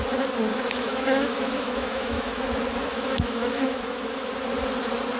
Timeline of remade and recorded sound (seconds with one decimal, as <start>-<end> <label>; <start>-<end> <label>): 0.0-0.5 recorded; 0.5-2.4 remade; 2.4-2.9 recorded; 2.9-4.3 remade; 4.3-5.2 recorded